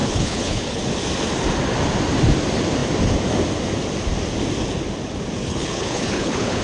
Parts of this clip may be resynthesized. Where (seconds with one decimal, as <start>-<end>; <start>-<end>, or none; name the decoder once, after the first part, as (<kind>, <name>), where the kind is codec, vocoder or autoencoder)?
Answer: 0.0-0.8 (codec, HILCodec); 5.4-6.6